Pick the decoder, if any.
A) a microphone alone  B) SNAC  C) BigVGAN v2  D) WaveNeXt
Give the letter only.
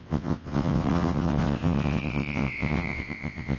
D